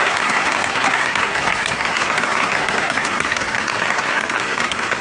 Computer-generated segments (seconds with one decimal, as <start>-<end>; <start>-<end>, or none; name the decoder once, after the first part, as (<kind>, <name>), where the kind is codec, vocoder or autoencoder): 0.0-5.0 (codec, SNAC)